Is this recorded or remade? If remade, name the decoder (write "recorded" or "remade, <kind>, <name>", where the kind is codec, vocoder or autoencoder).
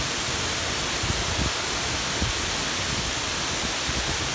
recorded